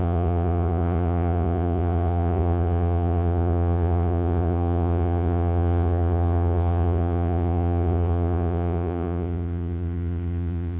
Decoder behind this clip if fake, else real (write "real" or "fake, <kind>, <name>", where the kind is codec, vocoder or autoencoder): fake, vocoder, Vocos